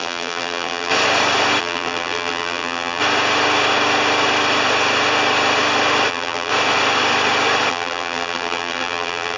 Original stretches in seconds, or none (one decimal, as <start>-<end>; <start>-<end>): 0.9-1.6; 3.0-6.1; 6.5-7.7